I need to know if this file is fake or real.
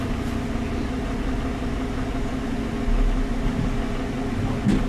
real